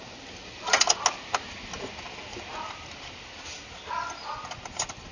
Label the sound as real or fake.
real